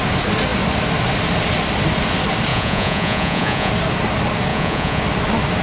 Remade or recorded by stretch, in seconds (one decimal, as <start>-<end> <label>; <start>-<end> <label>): 0.0-2.5 recorded; 2.5-3.7 remade; 3.7-4.5 recorded; 4.5-5.0 remade; 5.0-5.6 recorded